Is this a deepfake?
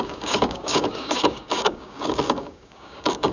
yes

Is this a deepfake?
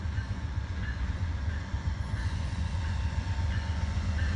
yes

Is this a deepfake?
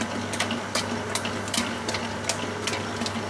no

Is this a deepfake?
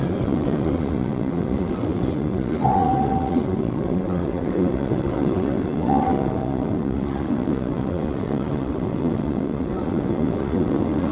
yes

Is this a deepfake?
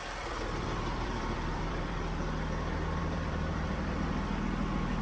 yes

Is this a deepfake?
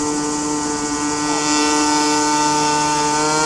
no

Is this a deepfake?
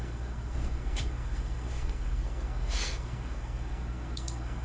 yes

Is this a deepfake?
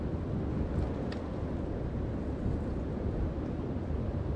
no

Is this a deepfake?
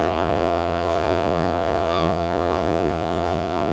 yes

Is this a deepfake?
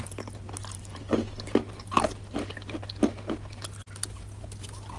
no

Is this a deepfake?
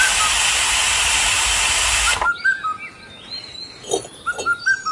no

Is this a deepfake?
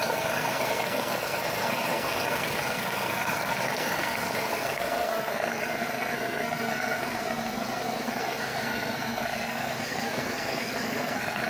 yes